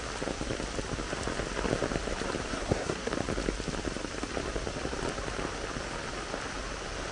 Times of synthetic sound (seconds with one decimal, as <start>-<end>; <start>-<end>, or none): 2.5-3.1